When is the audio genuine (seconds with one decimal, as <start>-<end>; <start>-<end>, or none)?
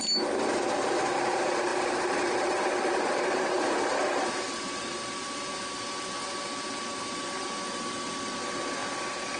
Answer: 0.0-1.7; 3.8-9.4